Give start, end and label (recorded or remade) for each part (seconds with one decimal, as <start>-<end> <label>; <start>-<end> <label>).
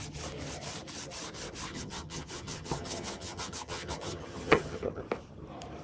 0.0-1.7 recorded; 1.7-5.0 remade; 5.0-5.8 recorded